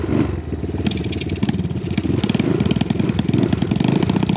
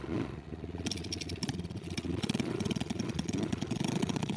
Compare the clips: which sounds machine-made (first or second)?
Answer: second